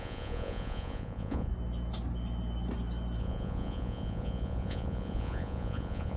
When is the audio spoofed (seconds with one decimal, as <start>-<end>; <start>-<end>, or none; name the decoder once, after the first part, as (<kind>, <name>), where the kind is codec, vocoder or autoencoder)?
0.0-1.5 (vocoder, Vocos); 3.2-6.2